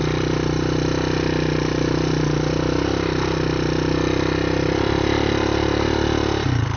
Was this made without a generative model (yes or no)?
yes